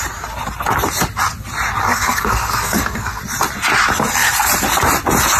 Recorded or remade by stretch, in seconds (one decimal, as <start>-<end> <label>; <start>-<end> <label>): 0.0-1.8 recorded; 1.8-3.2 remade; 3.2-5.4 recorded